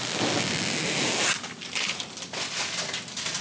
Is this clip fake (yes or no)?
no